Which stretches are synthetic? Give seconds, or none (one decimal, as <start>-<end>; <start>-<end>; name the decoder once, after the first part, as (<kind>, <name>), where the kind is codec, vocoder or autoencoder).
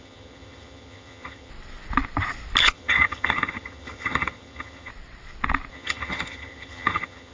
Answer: 0.0-1.5 (vocoder, HiFi-GAN); 2.6-4.9; 5.7-7.3